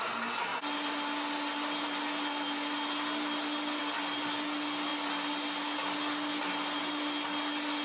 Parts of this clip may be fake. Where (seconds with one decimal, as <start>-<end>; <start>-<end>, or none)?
none